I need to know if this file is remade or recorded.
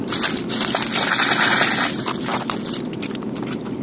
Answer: recorded